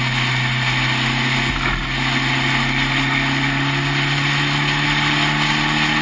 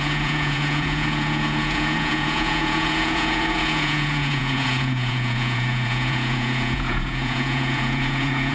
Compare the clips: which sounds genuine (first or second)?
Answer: first